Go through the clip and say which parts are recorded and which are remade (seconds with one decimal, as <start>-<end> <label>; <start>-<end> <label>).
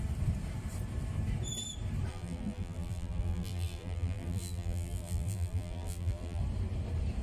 0.0-2.1 recorded; 2.1-6.4 remade; 6.4-7.2 recorded